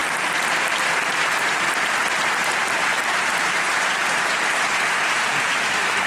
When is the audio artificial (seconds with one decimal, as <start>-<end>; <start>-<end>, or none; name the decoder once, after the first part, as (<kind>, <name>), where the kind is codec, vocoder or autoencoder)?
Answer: 2.4-6.1 (vocoder, BigVGAN v2)

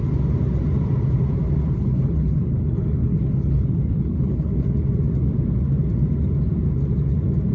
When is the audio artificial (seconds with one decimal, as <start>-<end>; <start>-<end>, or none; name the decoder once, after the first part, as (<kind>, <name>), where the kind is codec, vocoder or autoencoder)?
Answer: 1.6-4.7 (codec, HILCodec)

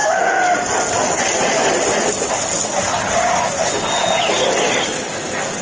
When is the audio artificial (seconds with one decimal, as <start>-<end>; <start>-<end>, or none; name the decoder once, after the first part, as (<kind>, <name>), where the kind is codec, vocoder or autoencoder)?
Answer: none